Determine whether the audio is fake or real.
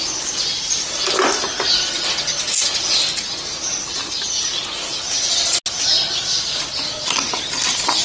real